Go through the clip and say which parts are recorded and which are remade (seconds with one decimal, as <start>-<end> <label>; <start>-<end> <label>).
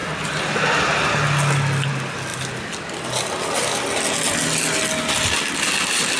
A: 0.0-6.2 recorded